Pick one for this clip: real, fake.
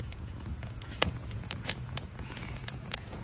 fake